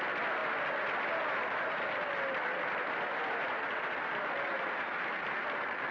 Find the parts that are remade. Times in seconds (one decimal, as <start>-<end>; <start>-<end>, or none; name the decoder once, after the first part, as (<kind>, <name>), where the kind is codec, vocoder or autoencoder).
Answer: none